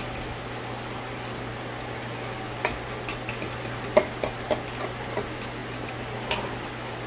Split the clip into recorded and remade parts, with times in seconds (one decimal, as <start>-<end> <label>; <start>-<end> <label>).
0.0-7.1 recorded